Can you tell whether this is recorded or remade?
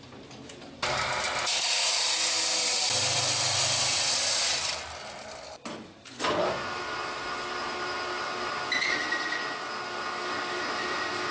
recorded